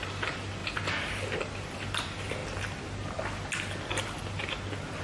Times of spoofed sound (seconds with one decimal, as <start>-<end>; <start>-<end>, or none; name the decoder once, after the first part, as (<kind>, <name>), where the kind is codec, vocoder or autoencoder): 0.0-0.6 (vocoder, BigVGAN v2); 1.4-2.4; 3.9-5.0

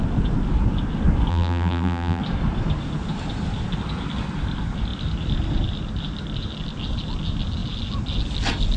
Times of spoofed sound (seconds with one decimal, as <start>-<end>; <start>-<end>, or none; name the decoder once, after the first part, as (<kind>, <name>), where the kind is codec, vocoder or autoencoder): 1.3-2.2 (vocoder, BigVGAN v2)

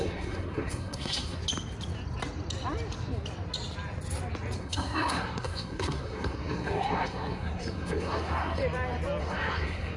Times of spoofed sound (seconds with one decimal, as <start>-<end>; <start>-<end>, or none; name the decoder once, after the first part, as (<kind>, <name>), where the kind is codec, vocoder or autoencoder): 0.0-1.4 (codec, SNAC); 4.6-8.6; 9.2-10.0

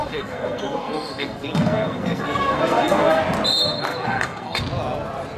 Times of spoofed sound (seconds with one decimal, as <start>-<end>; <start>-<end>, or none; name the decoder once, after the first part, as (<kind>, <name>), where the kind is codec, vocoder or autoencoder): 0.0-3.2 (codec, SNAC); 3.9-4.6

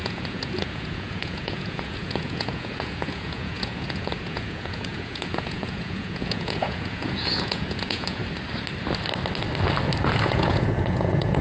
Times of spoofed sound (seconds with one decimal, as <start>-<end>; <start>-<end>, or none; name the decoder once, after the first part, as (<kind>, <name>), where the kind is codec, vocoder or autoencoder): 0.0-8.2 (vocoder, Vocos); 10.2-11.4

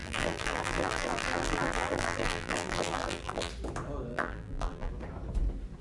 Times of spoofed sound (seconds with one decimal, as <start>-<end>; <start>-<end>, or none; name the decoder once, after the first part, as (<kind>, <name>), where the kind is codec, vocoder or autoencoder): 0.0-3.5 (vocoder, BigVGAN v2); 4.1-4.9

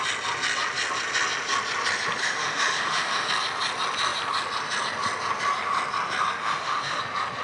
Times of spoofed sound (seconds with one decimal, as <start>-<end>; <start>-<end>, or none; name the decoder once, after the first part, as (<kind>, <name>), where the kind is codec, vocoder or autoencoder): 2.2-3.3 (autoencoder, DAC-VAE); 6.4-7.0

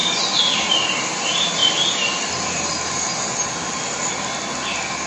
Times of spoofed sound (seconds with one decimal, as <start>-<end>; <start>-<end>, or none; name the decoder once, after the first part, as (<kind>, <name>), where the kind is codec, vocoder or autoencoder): 0.0-1.0 (vocoder, BigVGAN v2); 1.6-2.4